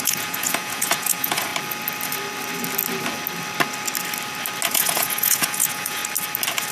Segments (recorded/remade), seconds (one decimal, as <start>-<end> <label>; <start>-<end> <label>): 0.0-1.5 remade; 1.5-4.7 recorded; 4.7-6.0 remade; 6.0-6.7 recorded